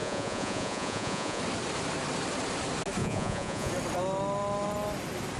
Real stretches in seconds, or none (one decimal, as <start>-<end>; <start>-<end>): 1.4-3.0; 3.7-5.4